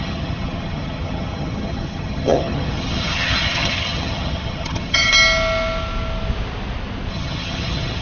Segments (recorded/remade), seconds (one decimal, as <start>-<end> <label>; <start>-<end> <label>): 0.0-5.1 remade; 5.1-7.1 recorded; 7.1-8.0 remade